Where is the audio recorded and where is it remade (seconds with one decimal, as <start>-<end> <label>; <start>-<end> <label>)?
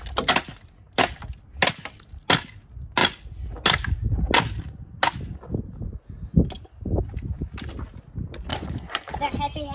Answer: 0.0-8.5 recorded; 8.5-9.2 remade; 9.2-9.7 recorded